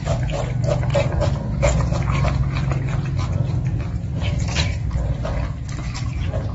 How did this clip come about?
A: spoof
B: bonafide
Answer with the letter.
B